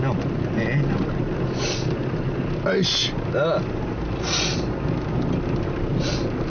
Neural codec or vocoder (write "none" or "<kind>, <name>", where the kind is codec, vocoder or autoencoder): none